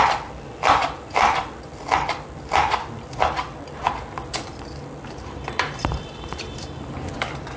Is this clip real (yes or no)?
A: no